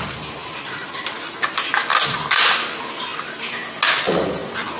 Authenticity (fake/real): real